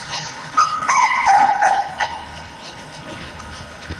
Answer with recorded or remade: remade